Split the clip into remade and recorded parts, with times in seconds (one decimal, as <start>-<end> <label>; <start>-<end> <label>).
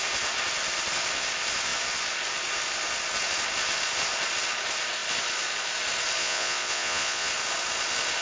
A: 0.0-6.2 recorded; 6.2-7.3 remade; 7.3-8.2 recorded